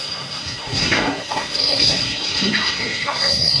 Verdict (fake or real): fake